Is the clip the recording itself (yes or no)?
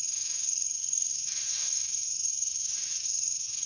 no